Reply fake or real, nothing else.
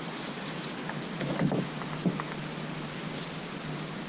real